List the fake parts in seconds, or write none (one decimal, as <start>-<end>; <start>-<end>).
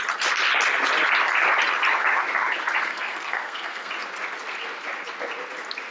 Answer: 2.9-3.9